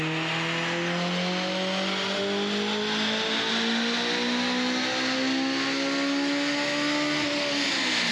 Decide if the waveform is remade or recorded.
recorded